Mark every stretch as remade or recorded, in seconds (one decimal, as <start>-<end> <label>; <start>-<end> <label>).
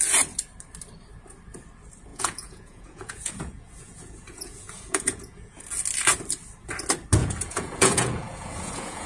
0.0-2.1 recorded; 2.1-5.6 remade; 5.6-7.2 recorded; 7.2-9.1 remade